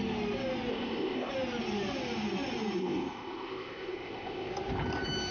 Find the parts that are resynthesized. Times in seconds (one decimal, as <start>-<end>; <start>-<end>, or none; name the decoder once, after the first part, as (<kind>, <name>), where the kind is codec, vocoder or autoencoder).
0.7-1.3 (codec, ZipCodec); 2.8-4.5